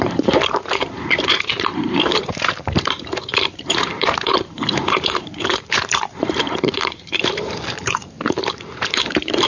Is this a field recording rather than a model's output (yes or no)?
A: no